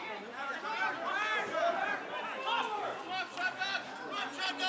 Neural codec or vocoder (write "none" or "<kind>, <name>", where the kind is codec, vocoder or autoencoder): none